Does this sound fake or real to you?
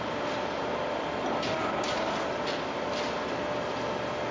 real